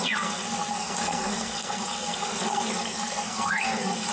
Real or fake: fake